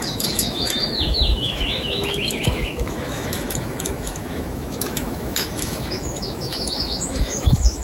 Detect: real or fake fake